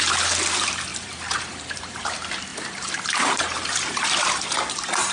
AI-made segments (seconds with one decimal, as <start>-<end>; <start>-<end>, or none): 0.9-2.0; 2.5-4.1